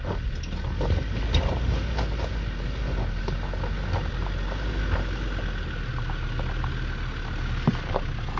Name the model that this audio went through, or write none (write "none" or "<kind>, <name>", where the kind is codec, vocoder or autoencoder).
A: none